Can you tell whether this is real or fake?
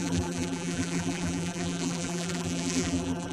fake